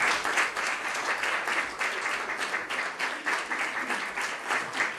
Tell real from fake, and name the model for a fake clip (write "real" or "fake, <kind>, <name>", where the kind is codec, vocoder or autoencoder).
real